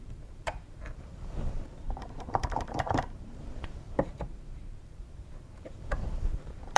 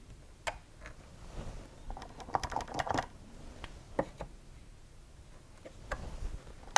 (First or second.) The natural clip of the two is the second